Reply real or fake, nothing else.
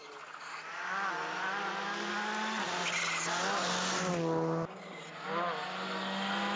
real